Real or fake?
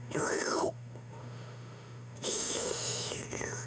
fake